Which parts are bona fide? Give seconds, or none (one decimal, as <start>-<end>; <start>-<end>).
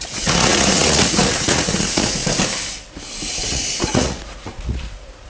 2.2-3.3